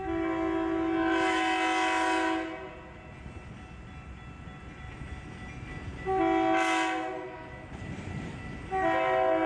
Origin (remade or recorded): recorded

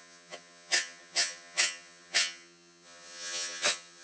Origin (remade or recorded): remade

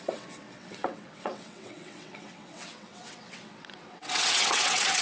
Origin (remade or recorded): remade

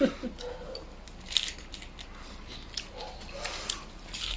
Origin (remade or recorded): recorded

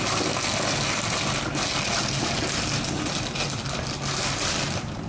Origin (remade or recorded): recorded